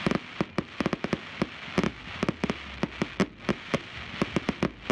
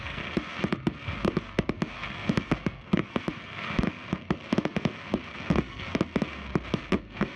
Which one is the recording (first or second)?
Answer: first